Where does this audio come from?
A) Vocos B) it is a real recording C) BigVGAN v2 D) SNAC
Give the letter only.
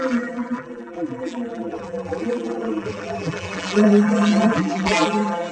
C